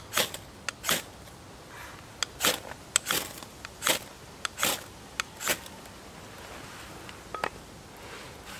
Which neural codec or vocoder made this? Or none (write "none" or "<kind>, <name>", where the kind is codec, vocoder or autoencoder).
none